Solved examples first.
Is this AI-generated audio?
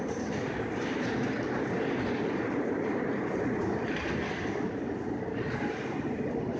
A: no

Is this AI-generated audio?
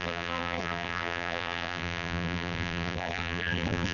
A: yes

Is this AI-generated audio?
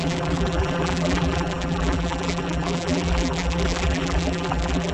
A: yes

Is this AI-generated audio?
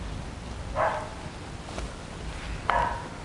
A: no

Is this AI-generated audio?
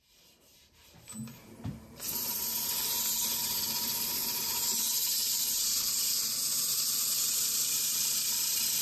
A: yes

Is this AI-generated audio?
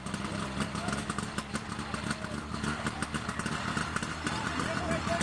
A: no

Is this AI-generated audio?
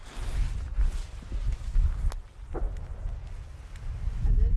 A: no